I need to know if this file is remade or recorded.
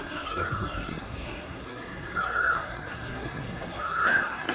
remade